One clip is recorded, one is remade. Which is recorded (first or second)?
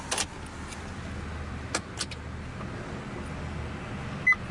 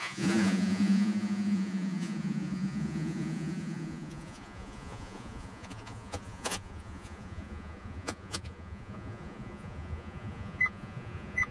first